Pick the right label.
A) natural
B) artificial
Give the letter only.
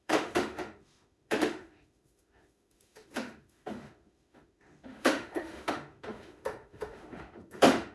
B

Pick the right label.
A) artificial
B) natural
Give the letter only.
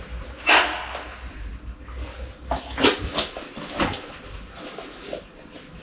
B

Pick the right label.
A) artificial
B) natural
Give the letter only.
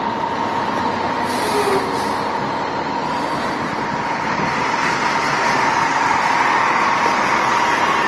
B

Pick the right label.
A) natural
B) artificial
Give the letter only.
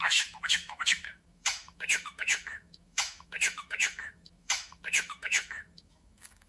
B